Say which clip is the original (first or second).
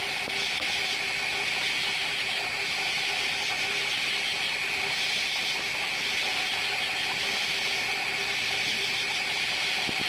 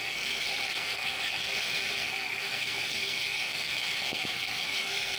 first